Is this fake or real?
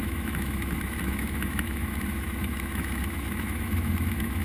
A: fake